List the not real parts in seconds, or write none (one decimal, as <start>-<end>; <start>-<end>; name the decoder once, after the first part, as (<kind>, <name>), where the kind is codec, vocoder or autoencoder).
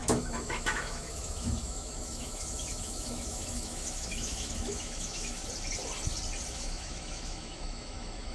0.0-5.4 (autoencoder, DAC-VAE); 6.5-8.3